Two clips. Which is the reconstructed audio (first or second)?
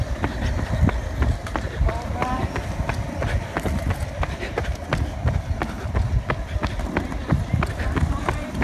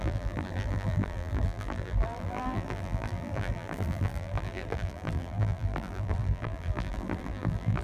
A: second